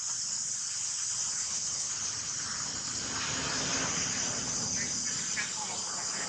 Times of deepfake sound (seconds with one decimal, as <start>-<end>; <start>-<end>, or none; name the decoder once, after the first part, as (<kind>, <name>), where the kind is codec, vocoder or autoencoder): 1.3-1.9 (codec, HILCodec)